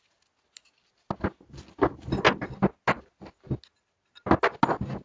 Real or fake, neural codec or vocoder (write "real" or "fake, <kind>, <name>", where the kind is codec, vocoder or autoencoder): real